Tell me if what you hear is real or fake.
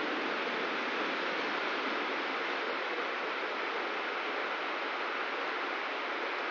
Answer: real